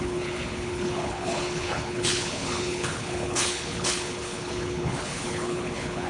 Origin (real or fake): fake